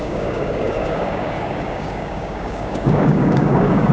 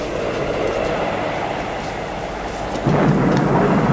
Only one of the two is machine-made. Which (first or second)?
first